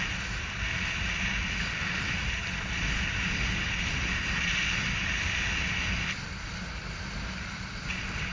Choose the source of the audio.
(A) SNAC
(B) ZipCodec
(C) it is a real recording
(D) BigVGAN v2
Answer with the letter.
C